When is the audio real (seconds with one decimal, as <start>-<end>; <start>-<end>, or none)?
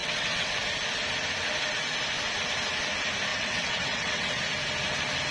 0.5-3.3; 4.4-5.3